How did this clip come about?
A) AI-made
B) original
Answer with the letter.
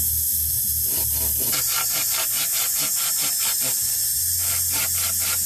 B